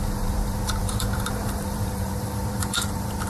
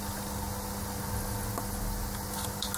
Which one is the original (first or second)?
second